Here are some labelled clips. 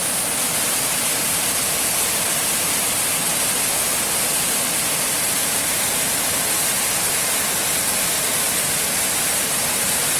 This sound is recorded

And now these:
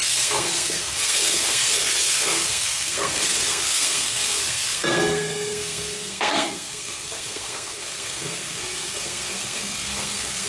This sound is remade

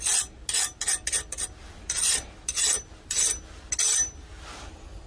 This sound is recorded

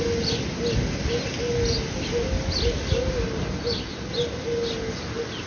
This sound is recorded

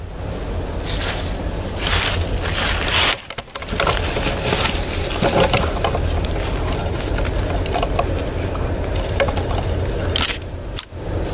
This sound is recorded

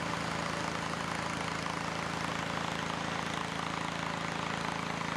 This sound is recorded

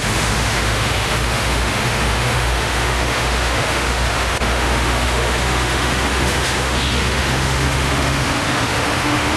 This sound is remade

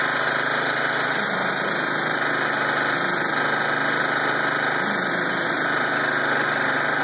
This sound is recorded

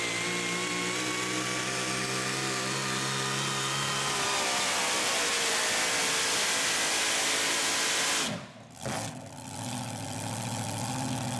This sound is recorded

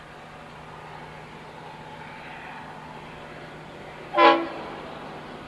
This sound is recorded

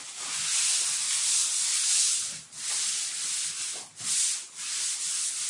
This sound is recorded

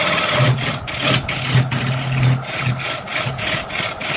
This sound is recorded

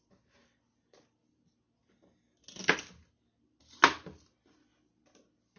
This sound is recorded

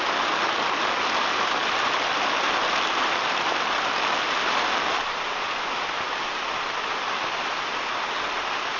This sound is recorded